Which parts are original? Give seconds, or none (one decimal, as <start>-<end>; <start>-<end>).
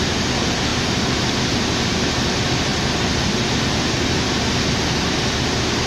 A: 0.0-5.9